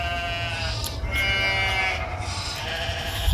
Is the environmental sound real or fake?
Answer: real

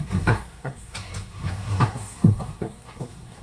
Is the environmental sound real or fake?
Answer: fake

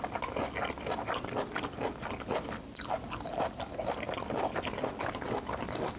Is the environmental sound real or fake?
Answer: real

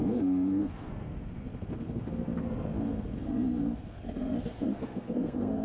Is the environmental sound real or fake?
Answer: fake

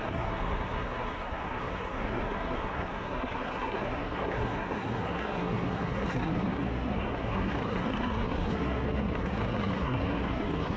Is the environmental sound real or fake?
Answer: fake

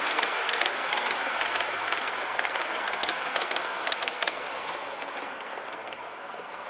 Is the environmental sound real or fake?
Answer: fake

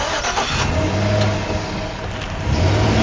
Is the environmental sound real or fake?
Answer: real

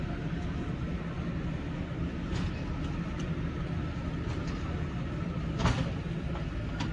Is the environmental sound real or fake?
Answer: real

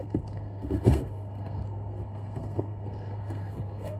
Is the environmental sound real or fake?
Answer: fake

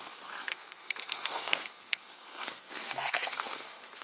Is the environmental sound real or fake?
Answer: fake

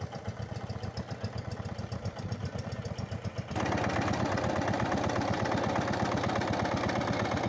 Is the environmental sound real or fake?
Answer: real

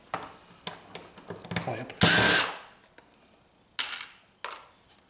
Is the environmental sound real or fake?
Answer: real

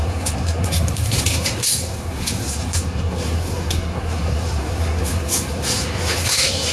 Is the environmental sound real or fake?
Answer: fake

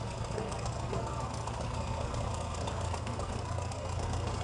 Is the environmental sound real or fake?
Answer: fake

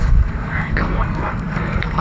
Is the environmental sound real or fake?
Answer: fake